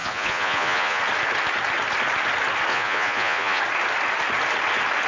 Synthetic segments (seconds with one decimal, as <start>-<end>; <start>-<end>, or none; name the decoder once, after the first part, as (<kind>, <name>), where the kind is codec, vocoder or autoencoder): 0.0-1.0 (vocoder, Vocos); 2.7-3.6